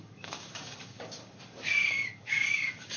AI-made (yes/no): yes